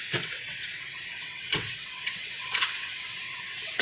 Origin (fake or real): fake